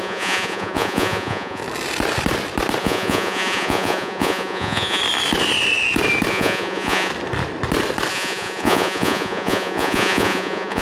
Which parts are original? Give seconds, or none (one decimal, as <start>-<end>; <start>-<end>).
1.6-2.8; 5.0-6.3; 7.1-8.1